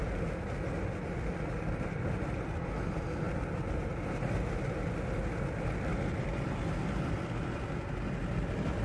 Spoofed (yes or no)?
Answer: no